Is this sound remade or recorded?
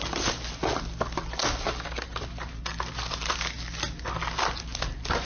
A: recorded